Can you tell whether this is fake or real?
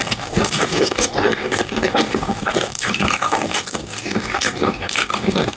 fake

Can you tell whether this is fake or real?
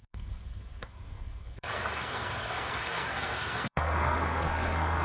fake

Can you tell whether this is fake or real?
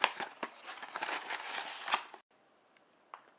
real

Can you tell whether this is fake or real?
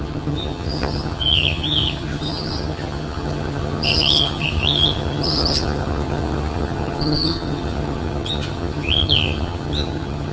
fake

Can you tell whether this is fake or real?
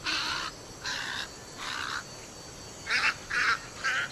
real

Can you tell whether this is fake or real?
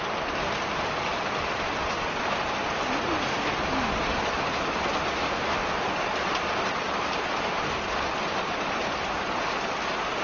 real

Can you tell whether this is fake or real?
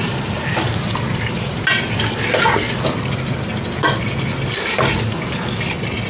real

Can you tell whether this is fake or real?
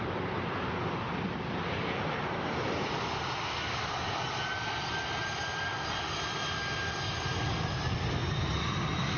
real